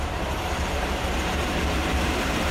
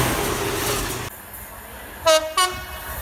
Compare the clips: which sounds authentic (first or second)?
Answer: second